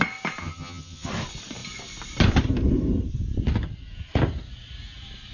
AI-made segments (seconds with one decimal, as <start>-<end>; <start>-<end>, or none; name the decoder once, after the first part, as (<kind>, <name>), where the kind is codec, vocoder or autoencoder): 0.4-1.1 (vocoder, HiFi-GAN)